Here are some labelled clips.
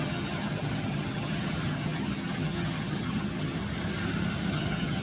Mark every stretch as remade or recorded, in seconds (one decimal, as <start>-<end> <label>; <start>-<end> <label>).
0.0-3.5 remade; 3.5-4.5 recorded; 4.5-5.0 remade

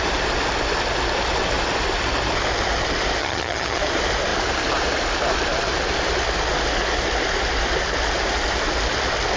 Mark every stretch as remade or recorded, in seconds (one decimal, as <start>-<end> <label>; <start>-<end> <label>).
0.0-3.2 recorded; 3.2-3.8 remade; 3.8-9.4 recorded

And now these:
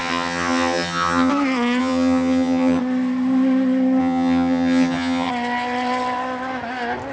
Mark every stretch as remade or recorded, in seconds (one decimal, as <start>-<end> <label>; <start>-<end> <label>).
0.0-1.3 remade; 1.3-1.8 recorded; 1.8-2.8 remade; 2.8-4.0 recorded; 4.0-5.3 remade; 5.3-7.1 recorded

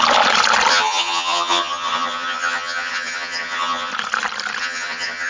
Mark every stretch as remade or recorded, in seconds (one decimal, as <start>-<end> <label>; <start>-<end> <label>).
0.0-0.7 recorded; 0.7-3.9 remade; 3.9-4.6 recorded; 4.6-5.3 remade

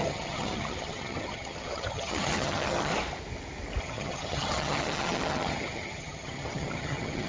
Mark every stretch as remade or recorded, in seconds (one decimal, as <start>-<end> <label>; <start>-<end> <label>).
0.0-2.9 remade; 2.9-3.8 recorded; 3.8-7.3 remade

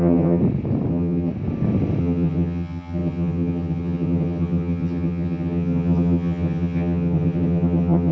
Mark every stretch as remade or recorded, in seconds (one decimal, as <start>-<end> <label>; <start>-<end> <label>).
0.0-0.4 remade; 0.4-0.9 recorded; 0.9-1.3 remade; 1.3-2.0 recorded; 2.0-8.1 remade